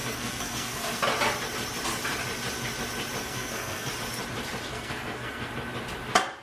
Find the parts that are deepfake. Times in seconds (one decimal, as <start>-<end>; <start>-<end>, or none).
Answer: 0.0-1.0; 3.2-3.9; 4.7-5.5